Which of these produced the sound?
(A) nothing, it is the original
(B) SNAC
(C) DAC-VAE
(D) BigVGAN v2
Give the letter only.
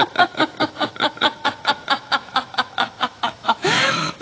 C